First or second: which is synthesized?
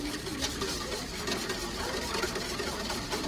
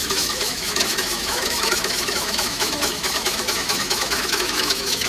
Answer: second